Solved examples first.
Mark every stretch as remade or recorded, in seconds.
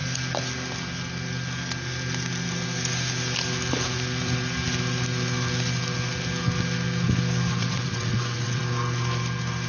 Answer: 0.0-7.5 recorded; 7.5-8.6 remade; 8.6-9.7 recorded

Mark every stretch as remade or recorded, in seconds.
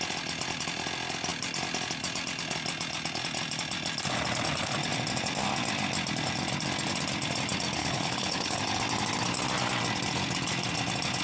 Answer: 0.0-7.8 recorded; 7.8-8.6 remade; 8.6-11.2 recorded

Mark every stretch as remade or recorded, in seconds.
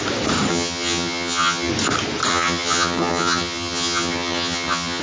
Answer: 0.0-0.5 recorded; 0.5-1.7 remade; 1.7-2.3 recorded; 2.3-5.0 remade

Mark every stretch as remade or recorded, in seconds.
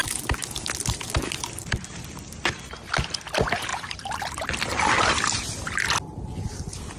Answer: 0.0-3.7 recorded; 3.7-4.5 remade; 4.5-7.0 recorded